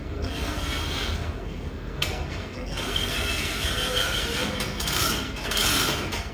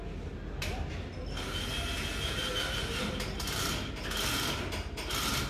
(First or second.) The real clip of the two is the second